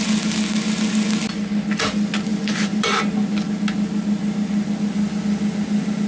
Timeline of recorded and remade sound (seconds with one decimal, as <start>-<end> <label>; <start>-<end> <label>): 0.0-2.3 recorded; 2.3-3.0 remade; 3.0-6.1 recorded